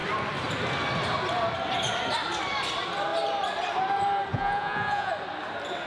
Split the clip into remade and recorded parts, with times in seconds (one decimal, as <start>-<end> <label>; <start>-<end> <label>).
0.0-4.3 recorded; 4.3-5.1 remade; 5.1-5.9 recorded